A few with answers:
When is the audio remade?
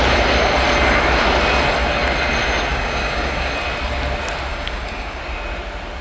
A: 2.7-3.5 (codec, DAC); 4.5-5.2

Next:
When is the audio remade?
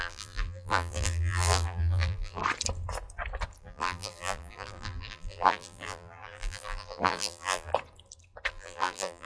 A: 0.0-2.4 (vocoder, BigVGAN v2); 3.6-7.7; 8.5-9.3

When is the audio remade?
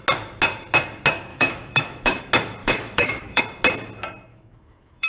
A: 1.3-2.2 (autoencoder, DAC-VAE); 2.6-3.4; 4.3-5.1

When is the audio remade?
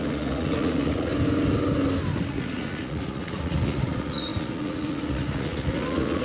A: 0.0-1.1 (vocoder, Vocos); 2.3-6.2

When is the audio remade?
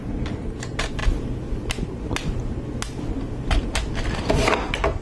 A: none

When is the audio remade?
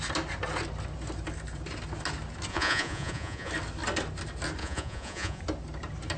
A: 2.5-3.5 (vocoder, Vocos); 4.6-5.4